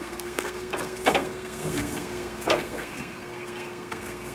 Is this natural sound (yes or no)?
no